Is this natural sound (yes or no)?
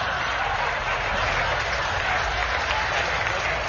yes